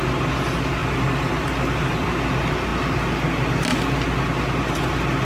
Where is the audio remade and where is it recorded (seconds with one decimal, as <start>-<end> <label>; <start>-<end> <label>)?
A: 0.0-0.8 recorded; 0.8-2.1 remade; 2.1-5.2 recorded